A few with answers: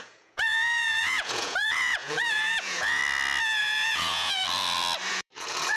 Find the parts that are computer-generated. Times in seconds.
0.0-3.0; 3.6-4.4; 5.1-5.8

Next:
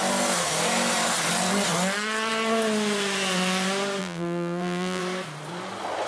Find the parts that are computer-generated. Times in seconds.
4.0-5.0